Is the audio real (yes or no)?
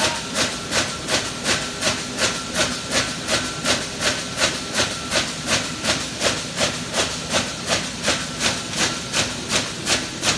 yes